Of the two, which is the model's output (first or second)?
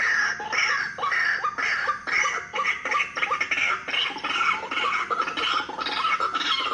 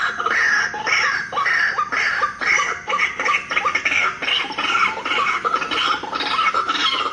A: second